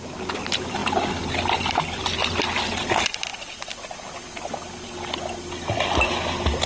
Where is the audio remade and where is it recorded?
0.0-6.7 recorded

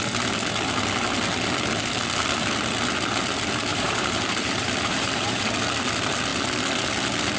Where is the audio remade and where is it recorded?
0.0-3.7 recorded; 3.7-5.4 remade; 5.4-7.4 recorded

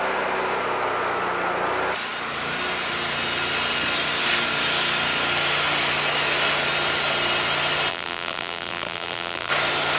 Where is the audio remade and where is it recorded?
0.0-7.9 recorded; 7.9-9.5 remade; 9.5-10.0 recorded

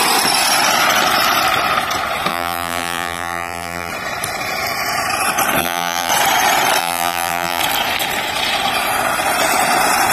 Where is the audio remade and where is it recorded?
0.0-2.3 recorded; 2.3-3.9 remade; 3.9-5.6 recorded; 5.6-6.1 remade; 6.1-6.8 recorded; 6.8-7.6 remade; 7.6-10.1 recorded

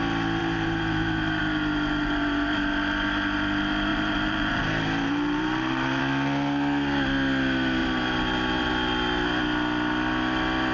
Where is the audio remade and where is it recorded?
0.0-0.4 recorded; 0.4-1.4 remade; 1.4-3.9 recorded; 3.9-6.0 remade; 6.0-7.8 recorded; 7.8-8.7 remade; 8.7-10.7 recorded

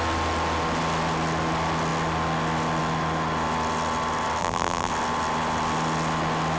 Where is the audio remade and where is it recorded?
0.0-4.4 recorded; 4.4-4.9 remade; 4.9-6.6 recorded